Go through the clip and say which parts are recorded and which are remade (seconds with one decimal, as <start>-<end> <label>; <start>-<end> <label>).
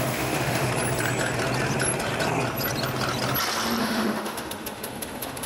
0.0-0.7 remade; 0.7-3.8 recorded; 3.8-5.5 remade